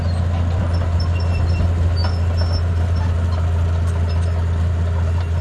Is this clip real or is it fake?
real